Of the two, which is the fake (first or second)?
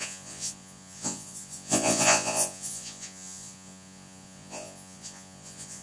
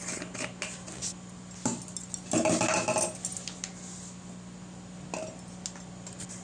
first